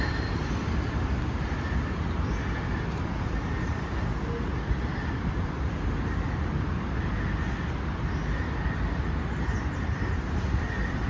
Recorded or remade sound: recorded